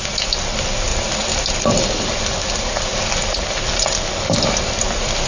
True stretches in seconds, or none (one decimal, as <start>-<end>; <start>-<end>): 0.0-5.3